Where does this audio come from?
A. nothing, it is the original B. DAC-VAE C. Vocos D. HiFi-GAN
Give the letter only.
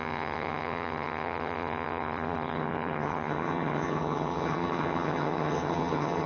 D